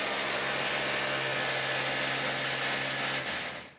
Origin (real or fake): real